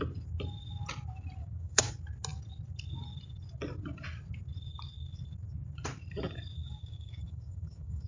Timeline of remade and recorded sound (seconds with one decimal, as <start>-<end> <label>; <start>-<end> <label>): 0.0-1.4 recorded; 1.4-1.9 remade; 1.9-6.6 recorded; 6.6-8.1 remade